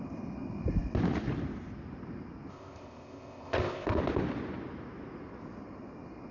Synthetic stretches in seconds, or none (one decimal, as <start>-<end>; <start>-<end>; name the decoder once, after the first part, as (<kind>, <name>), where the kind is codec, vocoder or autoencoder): 2.5-4.0 (codec, ZipCodec)